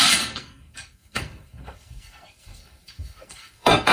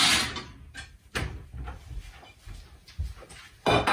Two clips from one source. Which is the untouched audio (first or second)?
second